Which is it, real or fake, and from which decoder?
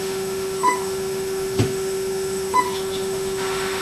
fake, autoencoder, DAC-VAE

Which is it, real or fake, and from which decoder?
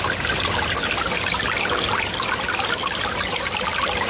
real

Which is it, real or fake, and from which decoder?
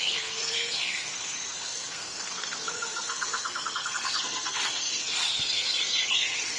fake, codec, SNAC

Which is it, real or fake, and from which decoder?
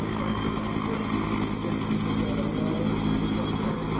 real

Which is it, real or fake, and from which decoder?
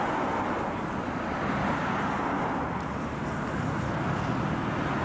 real